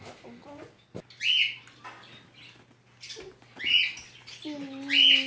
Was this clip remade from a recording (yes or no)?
no